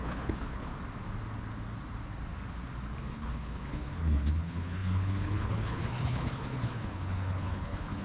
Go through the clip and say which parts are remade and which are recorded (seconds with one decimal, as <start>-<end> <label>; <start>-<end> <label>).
0.0-0.7 remade; 0.7-3.0 recorded; 3.0-8.0 remade